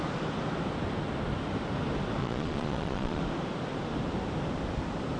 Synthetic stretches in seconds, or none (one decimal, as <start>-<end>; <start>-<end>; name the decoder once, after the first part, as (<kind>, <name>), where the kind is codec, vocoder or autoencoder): 2.2-3.2 (vocoder, Vocos)